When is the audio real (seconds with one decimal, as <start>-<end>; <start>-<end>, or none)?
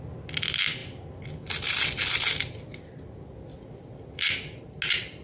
0.0-5.2